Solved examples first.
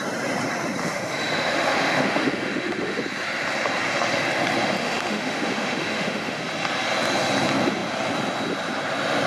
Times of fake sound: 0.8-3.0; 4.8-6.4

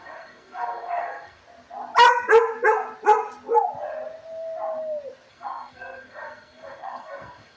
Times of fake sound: 0.0-1.4; 5.3-7.6

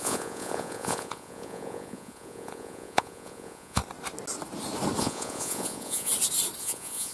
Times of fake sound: 0.0-3.8; 5.0-6.1; 6.6-7.1